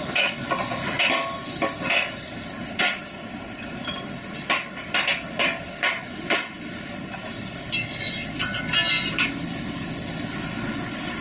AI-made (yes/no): no